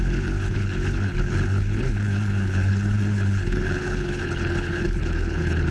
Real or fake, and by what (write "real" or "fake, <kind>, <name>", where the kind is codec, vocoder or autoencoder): fake, codec, HILCodec